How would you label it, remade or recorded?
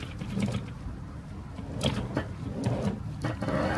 recorded